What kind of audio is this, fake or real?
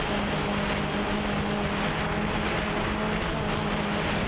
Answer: real